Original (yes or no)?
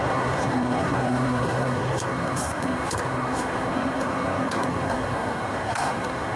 no